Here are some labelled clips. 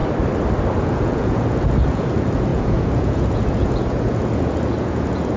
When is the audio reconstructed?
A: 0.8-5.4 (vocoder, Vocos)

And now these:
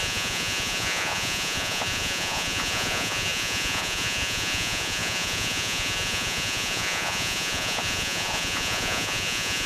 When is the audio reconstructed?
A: 0.0-9.7 (vocoder, Vocos)